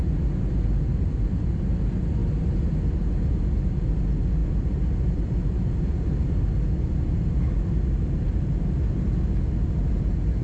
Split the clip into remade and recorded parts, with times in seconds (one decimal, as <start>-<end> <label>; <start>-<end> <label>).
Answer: 0.0-10.4 recorded